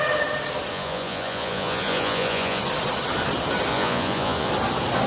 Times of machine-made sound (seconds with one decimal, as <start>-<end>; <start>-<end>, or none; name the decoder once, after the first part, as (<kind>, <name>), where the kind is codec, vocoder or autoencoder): 0.7-2.6 (vocoder, Vocos); 3.7-4.5